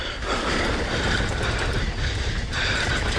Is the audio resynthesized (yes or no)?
yes